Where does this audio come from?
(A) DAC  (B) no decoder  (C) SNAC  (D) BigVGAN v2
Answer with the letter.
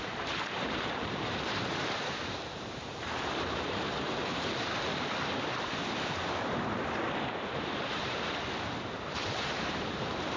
D